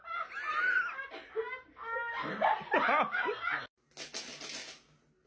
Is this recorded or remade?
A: recorded